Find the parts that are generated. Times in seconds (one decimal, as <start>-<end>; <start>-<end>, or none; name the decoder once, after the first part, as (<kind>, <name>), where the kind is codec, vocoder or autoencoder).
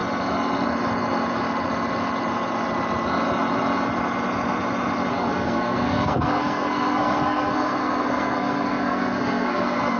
5.1-10.0 (codec, SNAC)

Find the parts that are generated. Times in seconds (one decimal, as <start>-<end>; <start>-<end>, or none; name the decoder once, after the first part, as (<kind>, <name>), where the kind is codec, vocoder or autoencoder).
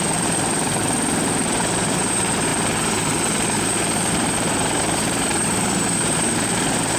0.0-7.0 (vocoder, BigVGAN v2)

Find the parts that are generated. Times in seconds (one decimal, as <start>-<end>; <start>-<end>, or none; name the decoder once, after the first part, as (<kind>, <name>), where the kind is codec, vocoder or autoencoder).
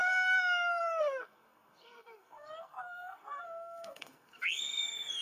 0.0-5.2 (codec, SNAC)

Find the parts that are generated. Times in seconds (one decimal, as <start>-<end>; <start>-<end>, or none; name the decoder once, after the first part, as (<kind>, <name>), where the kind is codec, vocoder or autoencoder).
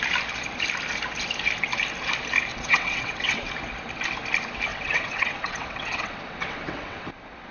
2.5-3.5 (vocoder, WaveNeXt); 4.7-7.1